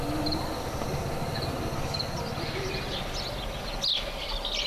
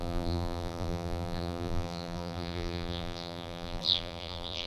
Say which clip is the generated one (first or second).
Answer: second